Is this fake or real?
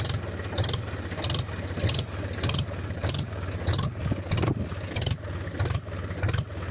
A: real